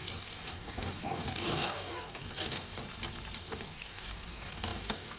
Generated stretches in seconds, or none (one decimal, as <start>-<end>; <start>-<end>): 0.0-2.8; 3.4-5.2